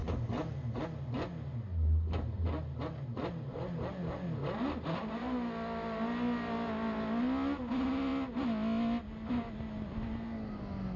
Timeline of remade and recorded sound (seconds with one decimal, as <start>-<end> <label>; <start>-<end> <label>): 0.0-11.0 recorded

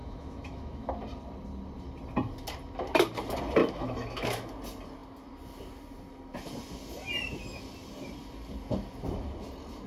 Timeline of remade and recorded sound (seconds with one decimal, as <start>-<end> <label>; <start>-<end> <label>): 0.0-0.9 remade; 0.9-3.6 recorded; 3.6-4.5 remade; 4.5-9.9 recorded